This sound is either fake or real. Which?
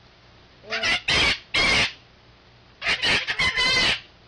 real